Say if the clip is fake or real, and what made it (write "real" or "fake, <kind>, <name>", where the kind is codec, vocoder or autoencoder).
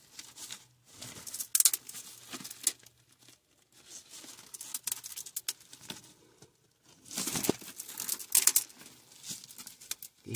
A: real